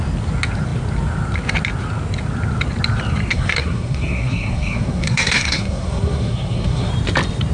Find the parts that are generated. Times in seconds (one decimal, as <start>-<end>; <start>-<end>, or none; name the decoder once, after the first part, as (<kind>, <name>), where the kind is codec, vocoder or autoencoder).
3.3-6.9 (codec, SNAC)